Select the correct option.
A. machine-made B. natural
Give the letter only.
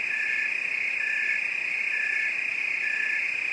B